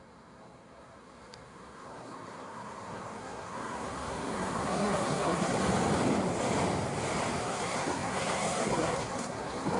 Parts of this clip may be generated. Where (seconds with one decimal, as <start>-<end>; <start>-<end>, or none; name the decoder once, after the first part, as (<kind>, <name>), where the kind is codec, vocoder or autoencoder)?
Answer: 0.0-5.6 (codec, SNAC); 7.4-9.8